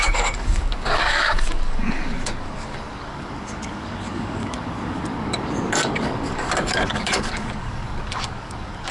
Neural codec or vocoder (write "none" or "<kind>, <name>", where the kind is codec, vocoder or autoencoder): codec, DAC